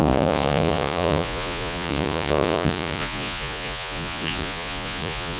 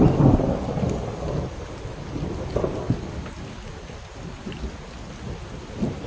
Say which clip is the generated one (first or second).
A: first